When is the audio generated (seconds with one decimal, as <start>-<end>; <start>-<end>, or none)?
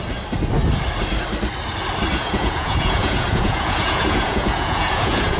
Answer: 2.1-5.4